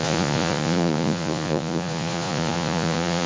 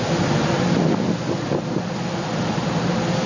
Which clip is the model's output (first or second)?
first